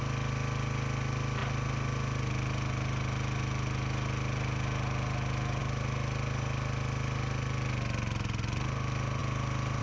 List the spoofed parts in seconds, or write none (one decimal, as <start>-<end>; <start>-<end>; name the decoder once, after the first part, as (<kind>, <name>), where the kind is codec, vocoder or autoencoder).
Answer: none